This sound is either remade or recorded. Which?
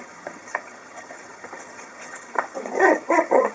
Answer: remade